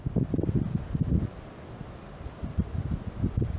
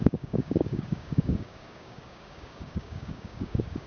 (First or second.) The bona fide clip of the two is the first